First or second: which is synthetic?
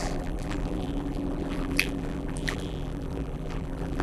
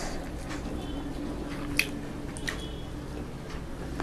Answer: first